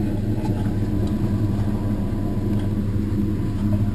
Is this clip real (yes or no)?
yes